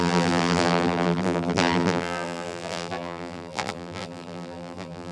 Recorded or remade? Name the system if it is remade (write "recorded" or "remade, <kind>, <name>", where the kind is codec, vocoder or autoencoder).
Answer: remade, vocoder, BigVGAN v2